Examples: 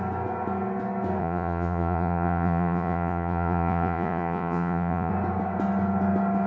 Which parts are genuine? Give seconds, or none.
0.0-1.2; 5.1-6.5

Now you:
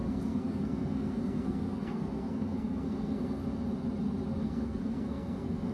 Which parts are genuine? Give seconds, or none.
3.4-4.4

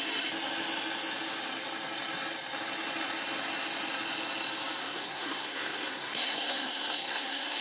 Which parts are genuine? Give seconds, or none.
0.0-4.8

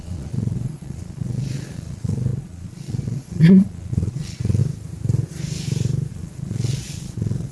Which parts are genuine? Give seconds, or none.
4.6-6.1

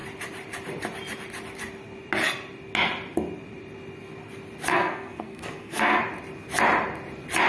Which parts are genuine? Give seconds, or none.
0.0-4.7; 6.0-7.5